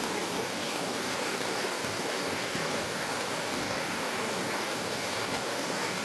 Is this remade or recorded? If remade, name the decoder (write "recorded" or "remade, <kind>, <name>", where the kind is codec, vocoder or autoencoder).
remade, codec, DAC